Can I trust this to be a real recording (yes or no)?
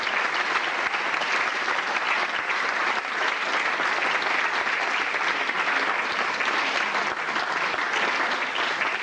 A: yes